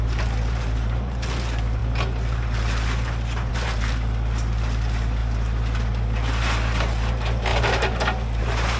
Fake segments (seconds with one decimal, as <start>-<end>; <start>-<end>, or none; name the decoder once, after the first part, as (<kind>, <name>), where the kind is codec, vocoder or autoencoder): none